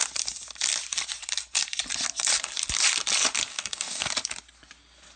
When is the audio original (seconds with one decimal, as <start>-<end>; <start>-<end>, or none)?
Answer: 0.0-3.5; 4.0-5.2